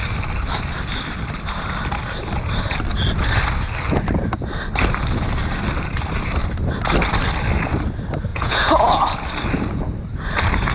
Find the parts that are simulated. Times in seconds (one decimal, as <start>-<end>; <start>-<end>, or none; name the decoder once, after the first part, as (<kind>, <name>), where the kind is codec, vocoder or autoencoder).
8.3-9.0 (vocoder, Vocos)